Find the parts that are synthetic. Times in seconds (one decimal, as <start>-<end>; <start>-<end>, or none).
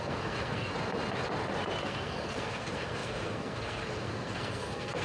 0.0-0.7; 1.8-5.0